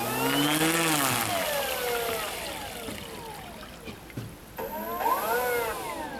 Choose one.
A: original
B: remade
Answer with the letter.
A